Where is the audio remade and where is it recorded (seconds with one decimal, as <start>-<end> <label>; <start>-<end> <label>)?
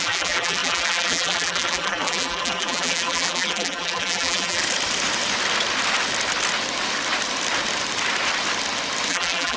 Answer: 0.0-4.6 remade; 4.6-9.1 recorded; 9.1-9.6 remade